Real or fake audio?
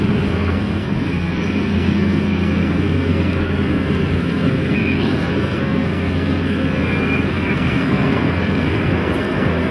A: fake